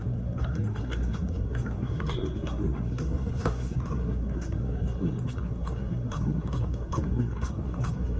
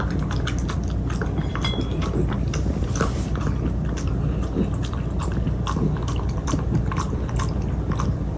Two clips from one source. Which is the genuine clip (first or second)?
second